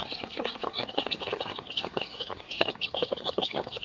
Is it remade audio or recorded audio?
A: remade